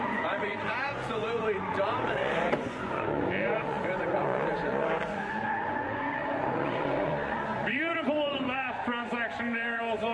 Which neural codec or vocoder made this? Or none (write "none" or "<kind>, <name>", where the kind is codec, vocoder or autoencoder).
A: vocoder, Vocos